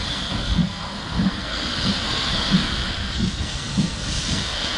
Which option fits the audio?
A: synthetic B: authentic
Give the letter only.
A